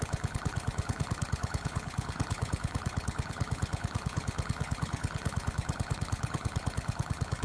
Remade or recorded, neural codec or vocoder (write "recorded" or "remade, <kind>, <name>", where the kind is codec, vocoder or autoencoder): remade, codec, HILCodec